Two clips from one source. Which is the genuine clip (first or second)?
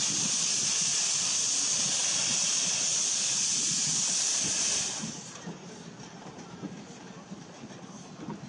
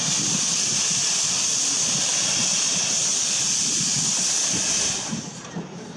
second